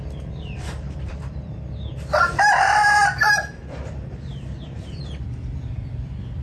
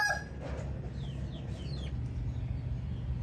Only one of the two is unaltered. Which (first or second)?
second